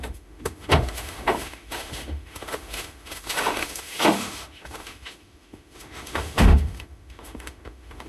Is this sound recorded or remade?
remade